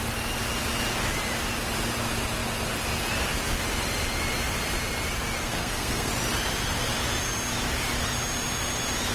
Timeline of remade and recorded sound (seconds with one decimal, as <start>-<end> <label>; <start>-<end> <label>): 0.0-5.4 recorded; 5.4-6.1 remade; 6.1-9.1 recorded